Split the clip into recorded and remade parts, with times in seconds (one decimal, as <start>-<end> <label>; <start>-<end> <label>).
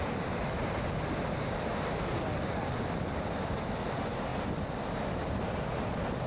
0.0-6.3 recorded